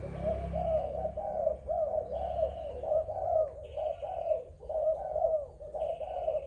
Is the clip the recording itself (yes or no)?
yes